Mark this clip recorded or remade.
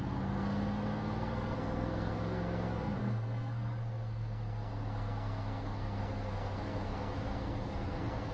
remade